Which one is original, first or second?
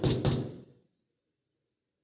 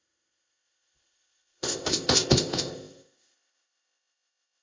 first